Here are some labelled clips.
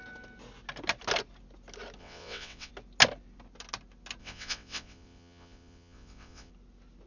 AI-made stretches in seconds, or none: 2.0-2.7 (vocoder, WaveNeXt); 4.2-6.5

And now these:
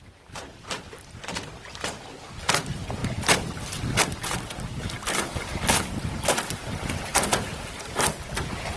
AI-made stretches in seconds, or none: none

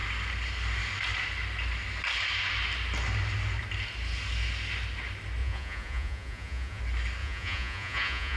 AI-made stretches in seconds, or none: 5.4-6.8 (vocoder, Vocos); 7.2-8.4